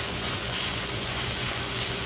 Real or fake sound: fake